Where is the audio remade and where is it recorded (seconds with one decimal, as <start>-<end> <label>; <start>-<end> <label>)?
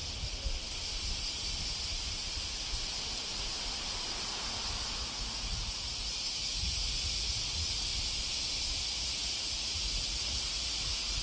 0.0-4.9 recorded; 4.9-7.9 remade; 7.9-8.8 recorded; 8.8-11.2 remade